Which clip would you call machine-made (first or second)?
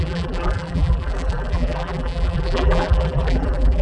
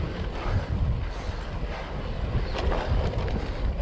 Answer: first